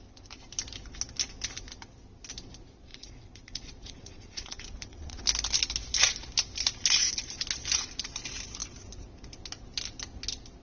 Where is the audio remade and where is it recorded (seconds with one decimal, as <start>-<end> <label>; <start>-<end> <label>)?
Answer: 0.0-2.9 recorded; 2.9-5.2 remade; 5.2-10.6 recorded